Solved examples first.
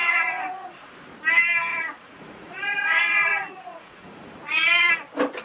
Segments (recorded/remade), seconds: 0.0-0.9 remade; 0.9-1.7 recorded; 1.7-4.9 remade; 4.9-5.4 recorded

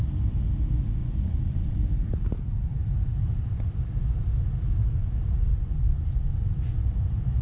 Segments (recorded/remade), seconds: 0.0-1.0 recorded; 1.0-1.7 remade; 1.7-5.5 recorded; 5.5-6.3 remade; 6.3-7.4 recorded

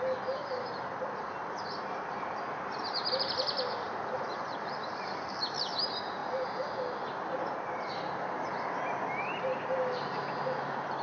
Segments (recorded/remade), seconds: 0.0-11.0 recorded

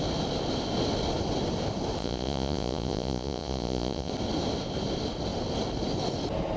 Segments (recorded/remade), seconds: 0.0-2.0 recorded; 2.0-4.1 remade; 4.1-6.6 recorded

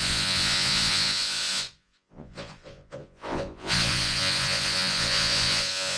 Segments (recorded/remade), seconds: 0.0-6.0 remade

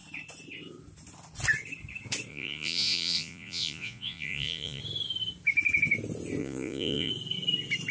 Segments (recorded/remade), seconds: 0.0-2.3 recorded; 2.3-4.8 remade; 4.8-6.4 recorded; 6.4-7.1 remade; 7.1-7.9 recorded

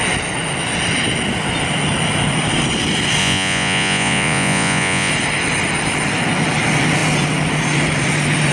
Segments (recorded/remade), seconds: 0.0-3.2 recorded; 3.2-5.1 remade; 5.1-8.5 recorded

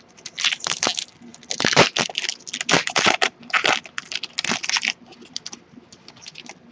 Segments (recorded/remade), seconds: 0.0-6.7 recorded